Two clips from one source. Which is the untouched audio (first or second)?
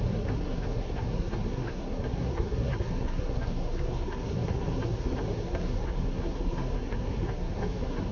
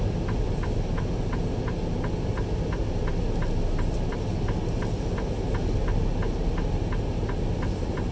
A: second